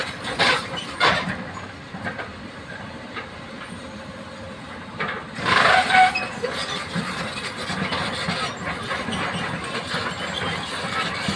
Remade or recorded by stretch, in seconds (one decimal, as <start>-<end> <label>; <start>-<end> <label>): 0.0-2.3 recorded; 2.3-5.6 remade; 5.6-6.6 recorded; 6.6-7.2 remade; 7.2-11.4 recorded